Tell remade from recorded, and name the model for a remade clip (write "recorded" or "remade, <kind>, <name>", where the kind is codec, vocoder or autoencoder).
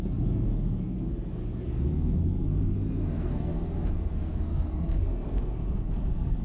remade, codec, SNAC